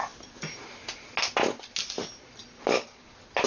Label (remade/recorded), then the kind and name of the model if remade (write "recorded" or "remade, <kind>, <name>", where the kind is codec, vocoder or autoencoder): recorded